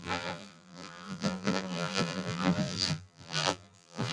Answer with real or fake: fake